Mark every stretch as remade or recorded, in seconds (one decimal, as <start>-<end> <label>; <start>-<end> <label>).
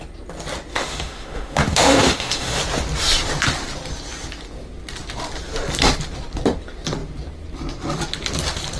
0.0-0.7 recorded; 0.7-2.6 remade; 2.6-8.8 recorded